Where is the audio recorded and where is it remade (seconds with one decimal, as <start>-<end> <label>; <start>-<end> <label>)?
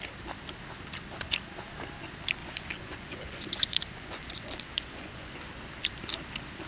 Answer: 0.0-2.4 recorded; 2.4-5.4 remade; 5.4-6.7 recorded